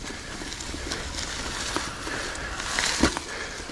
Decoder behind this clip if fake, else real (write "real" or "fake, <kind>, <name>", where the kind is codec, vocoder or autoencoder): real